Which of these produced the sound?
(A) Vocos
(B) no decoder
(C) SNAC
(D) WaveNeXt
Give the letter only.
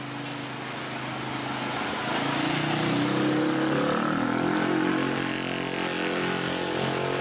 B